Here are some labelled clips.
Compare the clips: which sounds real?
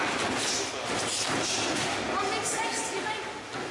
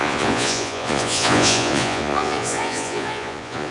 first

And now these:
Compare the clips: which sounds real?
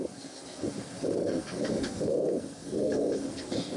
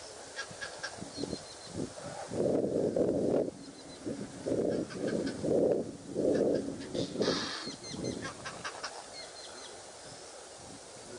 second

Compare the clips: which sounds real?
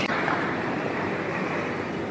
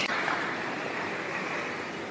second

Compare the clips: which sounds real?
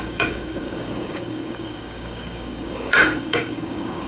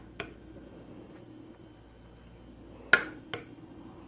second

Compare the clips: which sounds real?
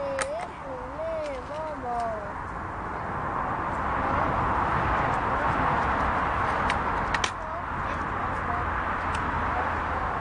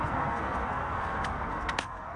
first